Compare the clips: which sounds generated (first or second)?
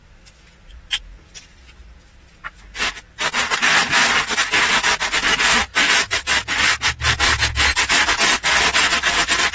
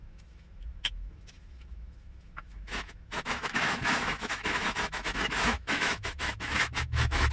second